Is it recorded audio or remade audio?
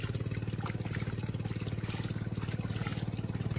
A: recorded